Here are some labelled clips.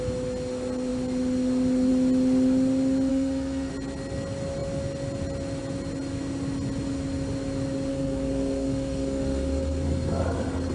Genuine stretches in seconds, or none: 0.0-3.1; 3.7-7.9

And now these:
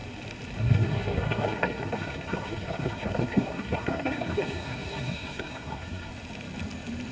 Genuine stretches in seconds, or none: 0.0-0.6; 6.1-7.1

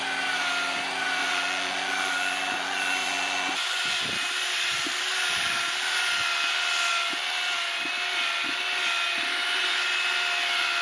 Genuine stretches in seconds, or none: 0.0-1.2; 4.0-10.8

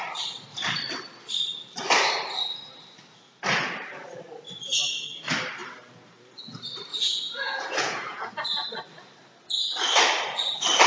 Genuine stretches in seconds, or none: 0.0-6.9; 8.3-10.9

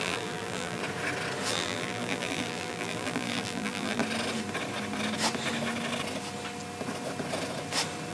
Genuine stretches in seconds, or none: 0.8-1.5; 4.0-8.1

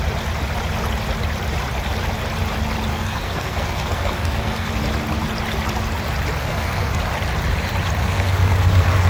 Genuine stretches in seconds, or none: 0.0-2.9; 4.7-6.4; 7.0-8.0

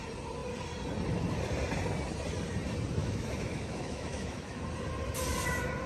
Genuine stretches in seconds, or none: 0.0-3.0; 4.6-5.9